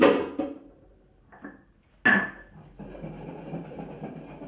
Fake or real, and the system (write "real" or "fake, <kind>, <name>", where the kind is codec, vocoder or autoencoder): real